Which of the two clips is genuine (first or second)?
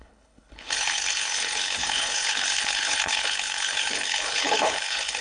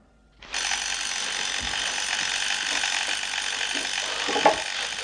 second